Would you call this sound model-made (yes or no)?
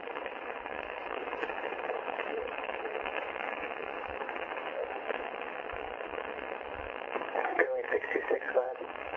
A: yes